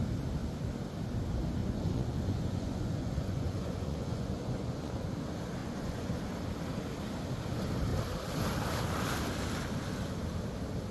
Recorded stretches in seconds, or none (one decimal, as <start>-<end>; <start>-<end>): 0.0-1.6; 5.1-5.6; 6.2-10.9